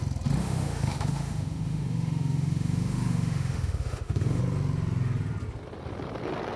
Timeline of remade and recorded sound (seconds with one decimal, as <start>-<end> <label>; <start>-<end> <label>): 0.0-0.4 recorded; 0.4-4.4 remade; 4.4-6.6 recorded